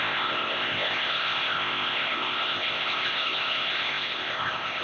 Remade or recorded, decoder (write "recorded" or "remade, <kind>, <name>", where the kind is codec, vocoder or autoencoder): remade, codec, ZipCodec